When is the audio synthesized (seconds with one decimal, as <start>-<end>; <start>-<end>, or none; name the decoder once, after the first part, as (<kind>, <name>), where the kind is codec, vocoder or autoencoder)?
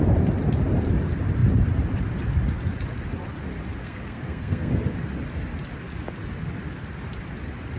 3.8-4.7 (codec, SNAC)